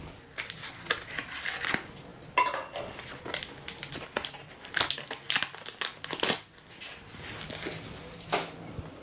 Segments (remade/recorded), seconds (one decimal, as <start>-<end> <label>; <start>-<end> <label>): 0.0-9.0 recorded